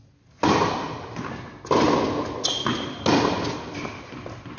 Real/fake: real